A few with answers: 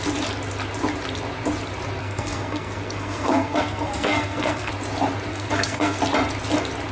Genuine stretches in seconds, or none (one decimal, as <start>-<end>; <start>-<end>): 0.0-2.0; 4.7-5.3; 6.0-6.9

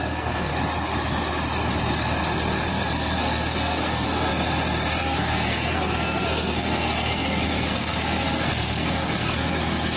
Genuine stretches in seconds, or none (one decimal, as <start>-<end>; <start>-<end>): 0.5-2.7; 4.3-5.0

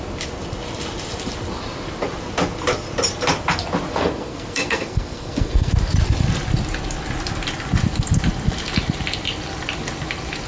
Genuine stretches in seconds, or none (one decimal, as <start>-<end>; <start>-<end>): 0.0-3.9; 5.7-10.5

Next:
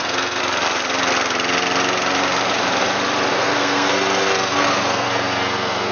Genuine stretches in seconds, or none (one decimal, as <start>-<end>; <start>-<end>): 0.4-3.3

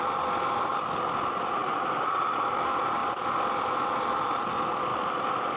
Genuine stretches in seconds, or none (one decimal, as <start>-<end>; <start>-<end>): 0.0-5.6

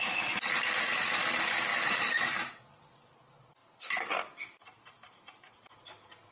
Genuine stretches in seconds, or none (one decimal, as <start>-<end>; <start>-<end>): 0.0-6.3